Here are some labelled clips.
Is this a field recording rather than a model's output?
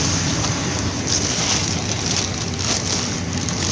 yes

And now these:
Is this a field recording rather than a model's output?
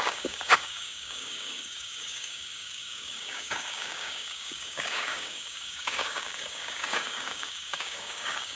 no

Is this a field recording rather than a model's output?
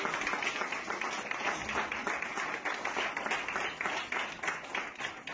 yes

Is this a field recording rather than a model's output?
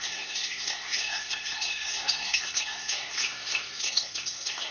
no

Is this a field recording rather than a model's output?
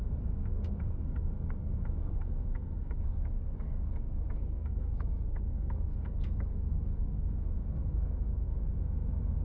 no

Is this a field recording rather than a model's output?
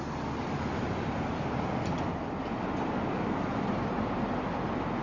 yes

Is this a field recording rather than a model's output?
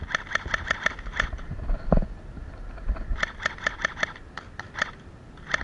yes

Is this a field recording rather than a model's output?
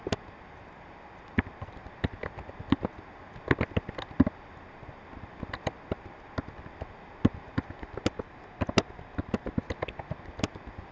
yes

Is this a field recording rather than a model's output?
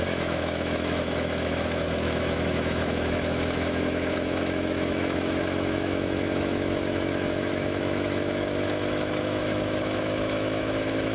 no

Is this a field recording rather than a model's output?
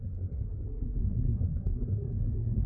no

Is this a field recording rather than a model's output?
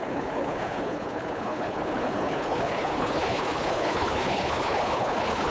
no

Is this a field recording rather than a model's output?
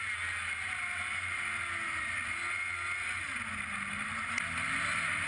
yes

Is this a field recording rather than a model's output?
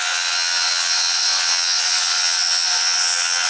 no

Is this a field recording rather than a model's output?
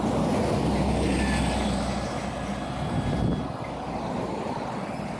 yes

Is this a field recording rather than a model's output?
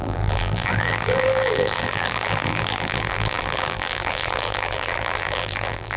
no